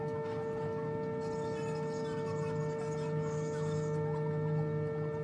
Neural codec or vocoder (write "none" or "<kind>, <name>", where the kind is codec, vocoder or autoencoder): none